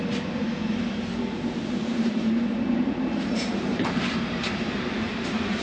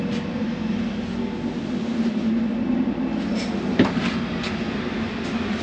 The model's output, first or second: first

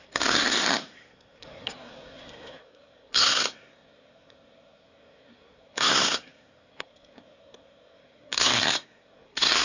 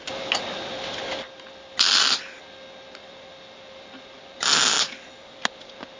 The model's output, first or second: first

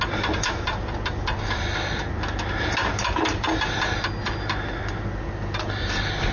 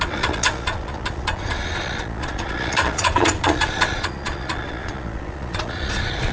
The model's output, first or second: second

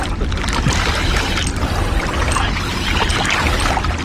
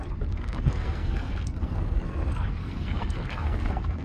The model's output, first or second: second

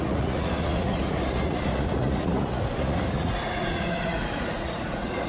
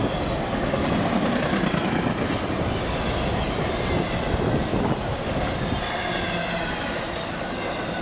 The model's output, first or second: first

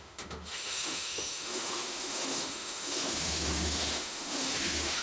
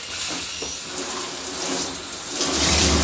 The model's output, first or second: first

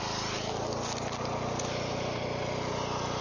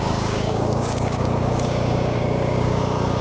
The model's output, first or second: second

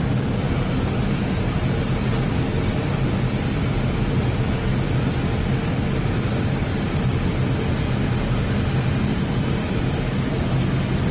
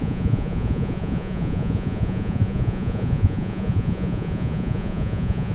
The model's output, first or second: second